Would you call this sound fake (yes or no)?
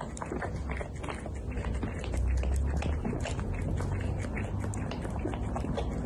no